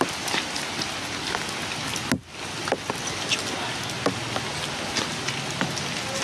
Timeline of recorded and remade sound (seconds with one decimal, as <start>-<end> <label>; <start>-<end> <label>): 0.0-6.2 recorded